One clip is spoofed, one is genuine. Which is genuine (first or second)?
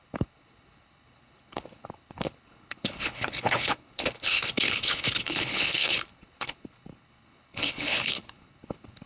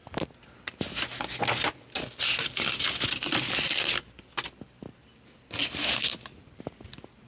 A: second